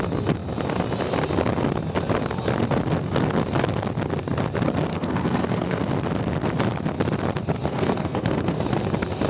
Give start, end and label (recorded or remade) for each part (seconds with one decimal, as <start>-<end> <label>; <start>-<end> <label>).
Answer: 0.0-4.9 recorded; 4.9-5.9 remade; 5.9-7.7 recorded; 7.7-8.6 remade; 8.6-9.3 recorded